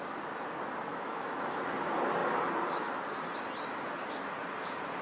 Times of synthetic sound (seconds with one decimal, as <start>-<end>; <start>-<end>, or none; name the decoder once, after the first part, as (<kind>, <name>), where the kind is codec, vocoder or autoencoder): 0.9-1.5 (autoencoder, DAC-VAE)